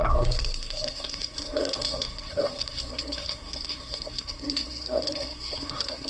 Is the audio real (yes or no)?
no